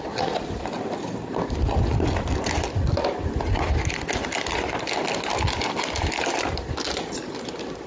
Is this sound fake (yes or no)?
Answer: no